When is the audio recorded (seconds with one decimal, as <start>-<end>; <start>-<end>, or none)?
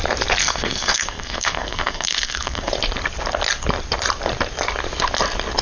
0.0-0.4; 2.7-5.6